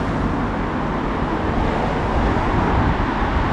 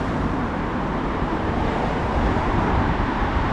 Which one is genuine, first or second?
first